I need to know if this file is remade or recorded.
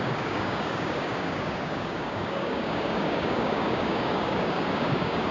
remade